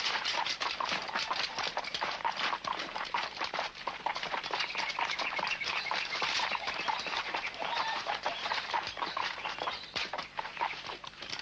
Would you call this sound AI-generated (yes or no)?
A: yes